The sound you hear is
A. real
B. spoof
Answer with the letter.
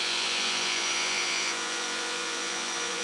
B